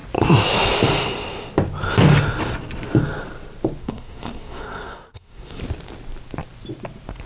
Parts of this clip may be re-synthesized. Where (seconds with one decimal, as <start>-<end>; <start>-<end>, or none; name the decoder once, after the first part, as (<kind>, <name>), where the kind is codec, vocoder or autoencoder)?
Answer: 3.8-5.6 (codec, SNAC)